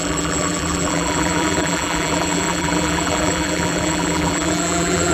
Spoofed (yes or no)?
yes